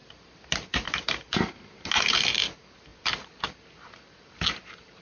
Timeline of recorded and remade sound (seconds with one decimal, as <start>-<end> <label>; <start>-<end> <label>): 0.0-5.0 recorded